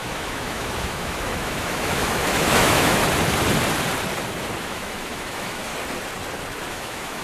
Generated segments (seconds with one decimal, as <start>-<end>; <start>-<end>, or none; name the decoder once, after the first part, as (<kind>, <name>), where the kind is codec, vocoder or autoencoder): 0.0-3.0 (autoencoder, DAC-VAE); 4.6-5.7; 6.7-7.2